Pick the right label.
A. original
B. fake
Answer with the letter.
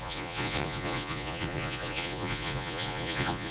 B